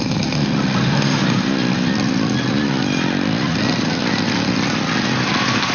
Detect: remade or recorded recorded